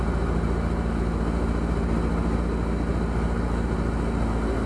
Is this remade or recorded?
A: recorded